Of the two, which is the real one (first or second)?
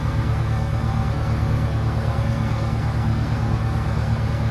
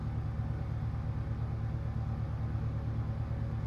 second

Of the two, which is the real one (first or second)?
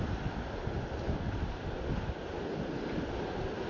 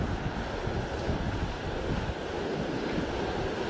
second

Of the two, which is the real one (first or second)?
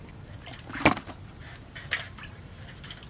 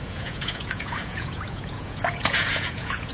first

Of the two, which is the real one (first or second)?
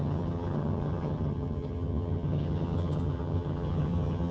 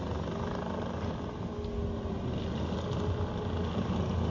second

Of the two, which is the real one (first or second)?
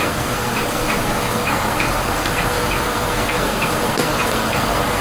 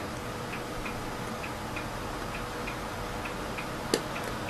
second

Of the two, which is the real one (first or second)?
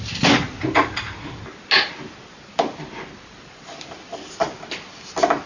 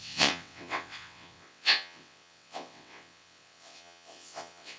first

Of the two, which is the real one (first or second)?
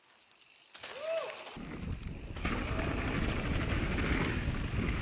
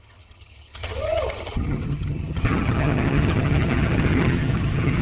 first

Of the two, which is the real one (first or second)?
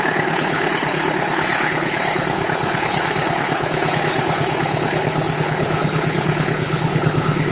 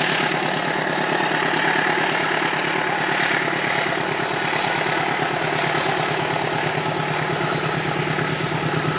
second